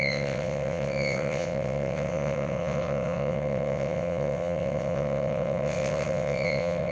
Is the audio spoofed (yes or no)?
yes